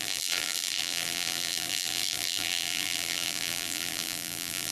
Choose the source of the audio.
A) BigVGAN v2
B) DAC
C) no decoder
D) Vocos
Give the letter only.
A